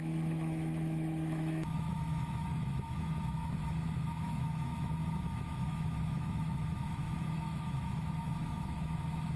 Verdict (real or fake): fake